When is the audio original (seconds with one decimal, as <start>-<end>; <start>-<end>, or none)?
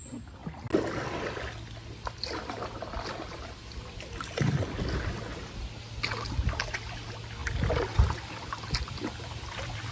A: 0.0-9.9